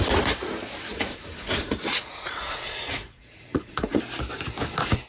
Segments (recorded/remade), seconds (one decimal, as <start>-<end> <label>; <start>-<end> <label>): 0.0-0.9 recorded; 0.9-4.0 remade; 4.0-5.1 recorded